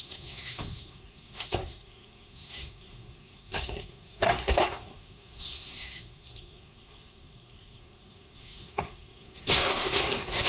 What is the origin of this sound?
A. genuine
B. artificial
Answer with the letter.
B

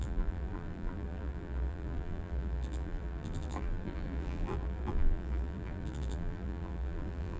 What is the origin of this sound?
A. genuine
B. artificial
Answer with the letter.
B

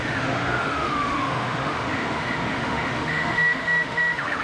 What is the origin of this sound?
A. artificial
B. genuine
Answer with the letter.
A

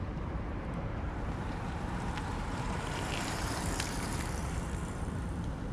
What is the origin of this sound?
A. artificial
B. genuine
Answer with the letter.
A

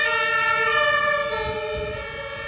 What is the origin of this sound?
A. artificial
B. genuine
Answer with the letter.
B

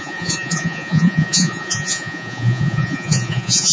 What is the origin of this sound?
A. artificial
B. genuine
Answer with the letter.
A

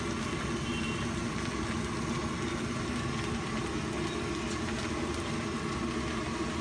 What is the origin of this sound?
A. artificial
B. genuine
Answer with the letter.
B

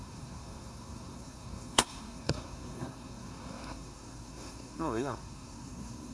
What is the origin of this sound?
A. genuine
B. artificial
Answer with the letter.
B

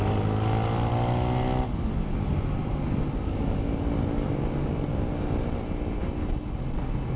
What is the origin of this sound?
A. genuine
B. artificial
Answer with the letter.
A